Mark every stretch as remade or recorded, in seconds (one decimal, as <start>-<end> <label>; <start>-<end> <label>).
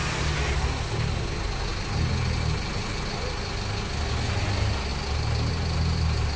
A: 0.0-6.4 recorded